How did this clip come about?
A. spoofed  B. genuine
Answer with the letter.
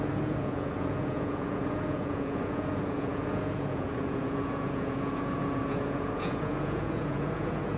A